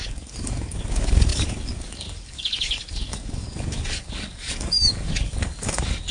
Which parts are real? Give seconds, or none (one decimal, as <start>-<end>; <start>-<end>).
none